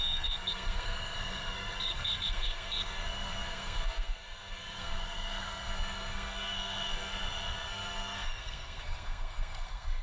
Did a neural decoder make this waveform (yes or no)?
yes